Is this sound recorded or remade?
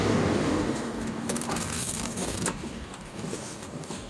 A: remade